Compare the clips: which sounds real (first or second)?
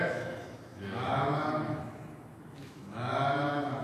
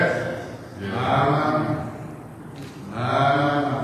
second